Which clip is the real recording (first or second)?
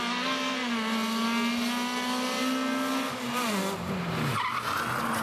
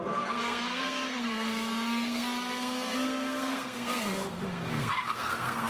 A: first